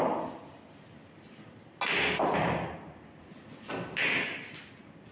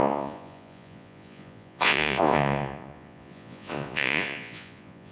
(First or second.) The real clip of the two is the first